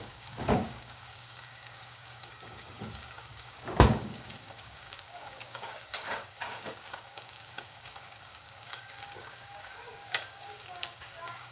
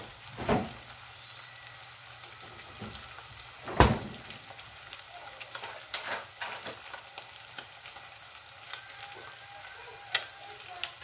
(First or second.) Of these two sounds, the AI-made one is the first